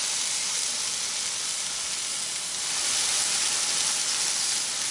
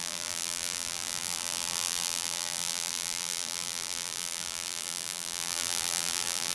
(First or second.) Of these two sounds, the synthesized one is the second